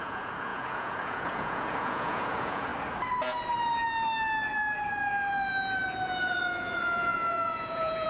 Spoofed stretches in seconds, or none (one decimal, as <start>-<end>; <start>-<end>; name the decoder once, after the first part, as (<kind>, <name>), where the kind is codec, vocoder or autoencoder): 0.0-2.7 (vocoder, Vocos); 6.2-8.1

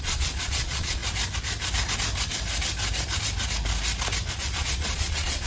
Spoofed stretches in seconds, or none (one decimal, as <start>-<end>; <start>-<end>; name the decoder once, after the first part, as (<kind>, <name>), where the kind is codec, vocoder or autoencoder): 0.0-1.0 (vocoder, Vocos); 4.3-5.5

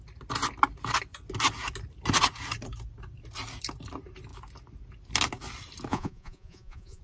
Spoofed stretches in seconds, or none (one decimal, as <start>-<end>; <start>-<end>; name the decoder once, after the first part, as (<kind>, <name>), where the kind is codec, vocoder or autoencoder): 5.9-7.0 (vocoder, Vocos)

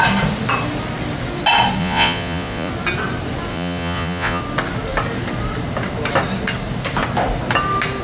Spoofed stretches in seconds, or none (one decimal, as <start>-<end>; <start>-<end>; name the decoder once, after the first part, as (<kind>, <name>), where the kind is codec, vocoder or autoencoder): 1.8-2.7 (vocoder, Vocos); 3.5-4.4

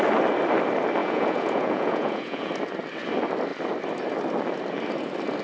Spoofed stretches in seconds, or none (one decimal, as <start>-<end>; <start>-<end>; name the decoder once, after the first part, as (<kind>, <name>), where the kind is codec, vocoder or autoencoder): 1.0-2.5 (vocoder, Vocos)

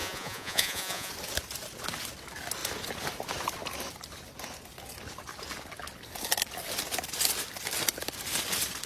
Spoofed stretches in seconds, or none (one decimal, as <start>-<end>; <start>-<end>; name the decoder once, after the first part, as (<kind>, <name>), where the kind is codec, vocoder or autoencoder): 0.0-1.1 (vocoder, Vocos)

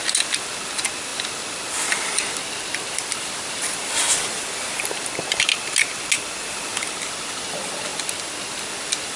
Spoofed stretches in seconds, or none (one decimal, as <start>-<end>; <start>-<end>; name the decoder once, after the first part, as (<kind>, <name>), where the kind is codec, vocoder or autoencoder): none

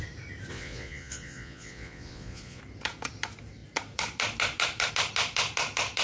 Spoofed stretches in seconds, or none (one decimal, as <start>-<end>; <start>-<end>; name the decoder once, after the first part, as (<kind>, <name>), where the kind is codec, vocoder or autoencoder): 0.5-2.6 (vocoder, Vocos)